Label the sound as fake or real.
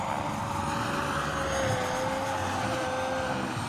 real